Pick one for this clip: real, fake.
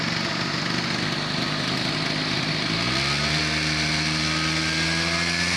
real